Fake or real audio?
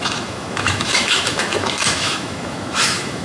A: fake